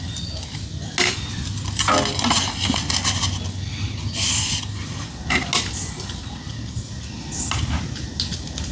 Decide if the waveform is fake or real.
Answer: real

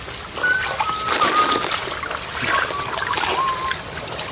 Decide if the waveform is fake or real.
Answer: real